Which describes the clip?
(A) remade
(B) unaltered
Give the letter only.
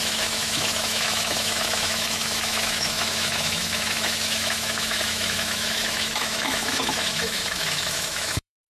A